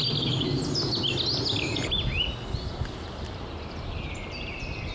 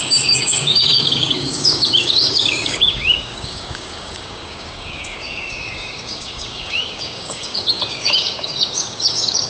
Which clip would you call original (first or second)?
first